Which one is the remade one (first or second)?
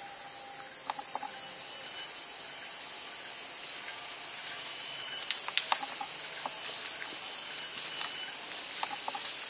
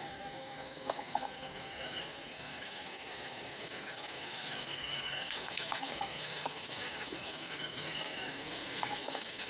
second